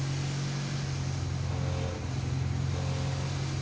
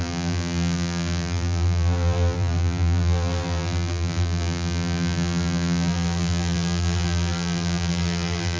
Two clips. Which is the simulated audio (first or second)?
second